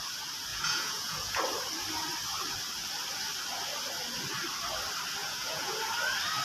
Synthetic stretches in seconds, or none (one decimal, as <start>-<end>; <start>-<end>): 0.5-1.4; 5.2-5.8